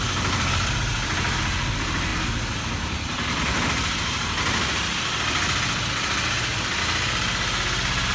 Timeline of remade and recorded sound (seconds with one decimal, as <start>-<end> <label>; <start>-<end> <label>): 0.0-8.1 recorded